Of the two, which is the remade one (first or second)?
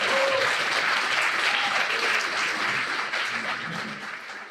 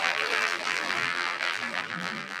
second